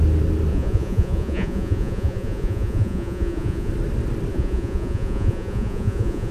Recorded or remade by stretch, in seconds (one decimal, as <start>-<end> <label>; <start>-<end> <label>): 0.0-0.5 recorded; 0.5-3.7 remade; 3.7-4.3 recorded; 4.3-6.3 remade